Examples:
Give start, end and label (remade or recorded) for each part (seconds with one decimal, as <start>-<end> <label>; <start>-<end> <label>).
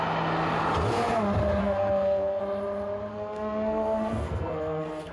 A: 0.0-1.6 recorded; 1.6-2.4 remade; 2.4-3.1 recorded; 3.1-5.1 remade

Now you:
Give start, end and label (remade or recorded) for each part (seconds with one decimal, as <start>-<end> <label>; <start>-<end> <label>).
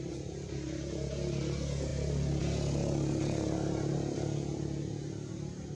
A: 0.0-5.7 recorded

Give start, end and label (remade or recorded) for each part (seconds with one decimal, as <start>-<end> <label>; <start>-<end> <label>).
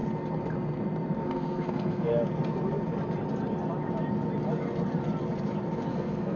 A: 0.0-1.2 recorded; 1.2-2.1 remade; 2.1-5.9 recorded; 5.9-6.4 remade